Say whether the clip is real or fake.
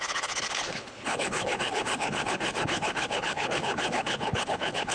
fake